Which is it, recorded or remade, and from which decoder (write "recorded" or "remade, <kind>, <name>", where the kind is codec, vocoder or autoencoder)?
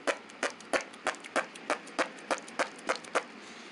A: recorded